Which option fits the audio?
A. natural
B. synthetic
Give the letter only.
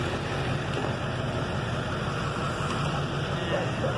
A